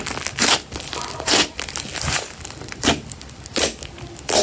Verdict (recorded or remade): recorded